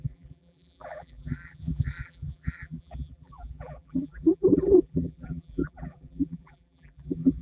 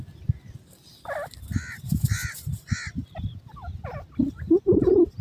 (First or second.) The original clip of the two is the second